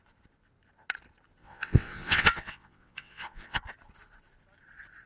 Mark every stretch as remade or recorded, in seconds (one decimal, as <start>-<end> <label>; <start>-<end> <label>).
0.0-1.4 recorded; 1.4-3.6 remade; 3.6-5.1 recorded